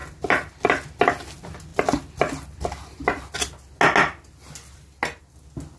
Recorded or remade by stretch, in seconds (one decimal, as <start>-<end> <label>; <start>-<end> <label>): 0.0-5.8 recorded